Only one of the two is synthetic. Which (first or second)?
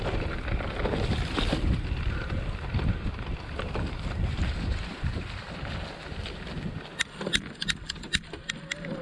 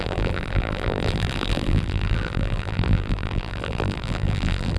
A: second